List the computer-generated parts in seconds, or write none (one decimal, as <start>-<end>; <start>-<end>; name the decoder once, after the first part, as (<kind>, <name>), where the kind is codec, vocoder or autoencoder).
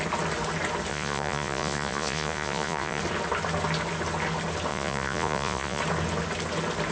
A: 0.9-3.0 (vocoder, Vocos); 4.7-5.8